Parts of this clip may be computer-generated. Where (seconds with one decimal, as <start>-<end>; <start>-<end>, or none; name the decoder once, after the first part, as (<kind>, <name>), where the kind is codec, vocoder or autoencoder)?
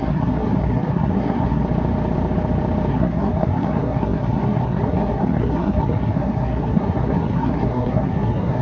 0.0-1.6 (codec, SNAC); 2.9-8.6